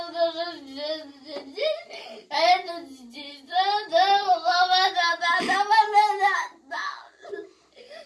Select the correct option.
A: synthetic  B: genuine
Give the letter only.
B